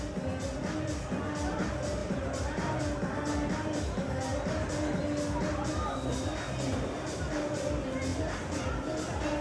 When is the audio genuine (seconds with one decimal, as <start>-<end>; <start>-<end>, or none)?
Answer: 0.0-2.0; 2.8-8.1; 8.6-9.4